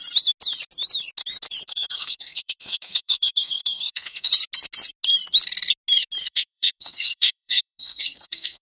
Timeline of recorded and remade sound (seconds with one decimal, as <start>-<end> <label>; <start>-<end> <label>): 0.0-1.6 recorded; 1.6-4.3 remade; 4.3-6.2 recorded; 6.2-8.6 remade